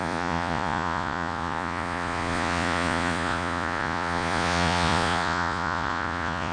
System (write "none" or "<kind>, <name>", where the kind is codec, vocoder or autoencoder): vocoder, Vocos